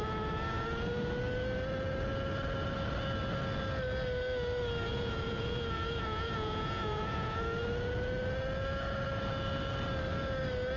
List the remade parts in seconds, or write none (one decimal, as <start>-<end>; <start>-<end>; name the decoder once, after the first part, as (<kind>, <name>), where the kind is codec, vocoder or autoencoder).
4.9-7.4 (vocoder, Vocos)